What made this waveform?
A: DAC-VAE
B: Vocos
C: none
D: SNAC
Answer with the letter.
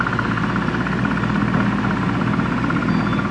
C